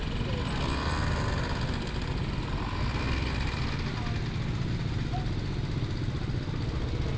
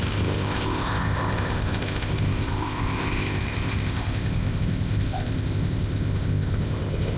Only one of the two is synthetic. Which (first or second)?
second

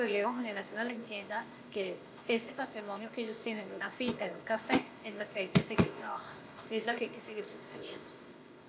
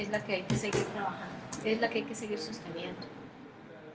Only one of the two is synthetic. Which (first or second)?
first